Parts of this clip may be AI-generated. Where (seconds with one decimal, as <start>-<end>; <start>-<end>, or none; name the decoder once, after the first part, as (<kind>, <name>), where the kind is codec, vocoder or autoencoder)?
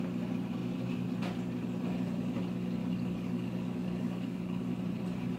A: 2.8-4.6 (codec, DAC)